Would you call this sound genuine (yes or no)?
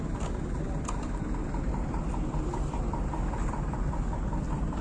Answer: yes